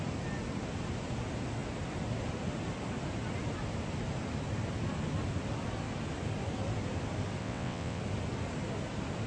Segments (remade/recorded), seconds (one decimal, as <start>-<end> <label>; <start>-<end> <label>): 0.0-7.4 recorded; 7.4-8.0 remade; 8.0-9.3 recorded